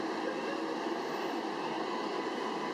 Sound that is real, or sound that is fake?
real